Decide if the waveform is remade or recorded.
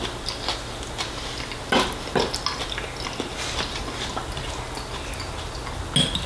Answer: recorded